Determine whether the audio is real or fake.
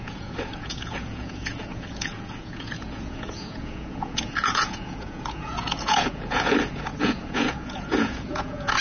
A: fake